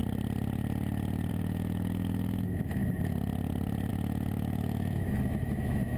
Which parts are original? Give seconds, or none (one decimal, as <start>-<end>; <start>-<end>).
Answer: 0.0-1.3; 2.8-3.9